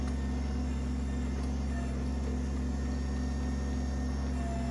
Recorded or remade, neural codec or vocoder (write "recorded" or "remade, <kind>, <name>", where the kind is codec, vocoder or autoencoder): recorded